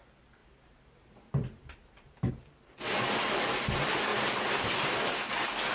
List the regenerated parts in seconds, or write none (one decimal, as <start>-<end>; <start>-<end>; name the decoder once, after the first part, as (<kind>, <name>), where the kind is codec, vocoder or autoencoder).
0.4-2.3 (vocoder, BigVGAN v2); 4.1-4.9